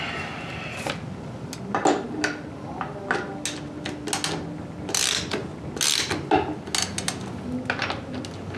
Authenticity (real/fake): real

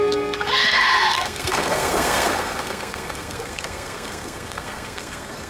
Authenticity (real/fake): fake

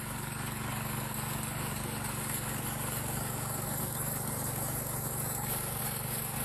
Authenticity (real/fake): fake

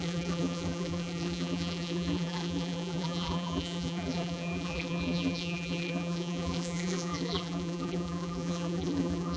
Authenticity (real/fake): fake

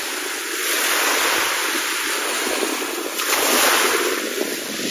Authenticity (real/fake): real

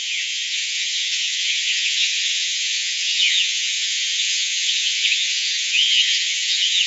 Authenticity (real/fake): fake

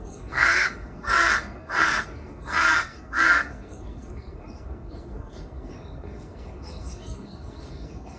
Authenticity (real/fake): fake